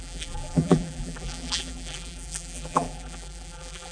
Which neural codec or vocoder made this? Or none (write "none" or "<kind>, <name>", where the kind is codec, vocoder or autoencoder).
vocoder, BigVGAN v2